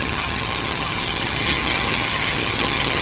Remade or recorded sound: remade